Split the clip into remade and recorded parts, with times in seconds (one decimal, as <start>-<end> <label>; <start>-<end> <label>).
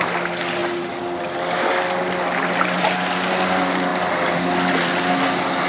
0.0-5.7 recorded